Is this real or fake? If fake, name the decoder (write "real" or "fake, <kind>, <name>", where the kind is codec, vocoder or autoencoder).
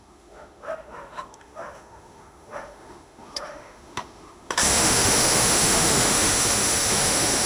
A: fake, autoencoder, DAC-VAE